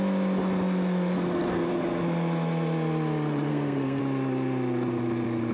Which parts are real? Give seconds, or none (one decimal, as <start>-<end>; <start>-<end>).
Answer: 0.0-3.5; 4.0-5.5